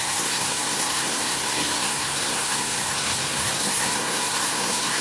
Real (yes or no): no